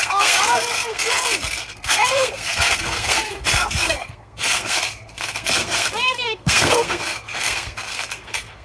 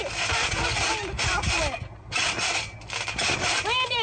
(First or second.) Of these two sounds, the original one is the second